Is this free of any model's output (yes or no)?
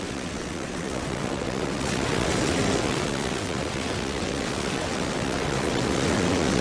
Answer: no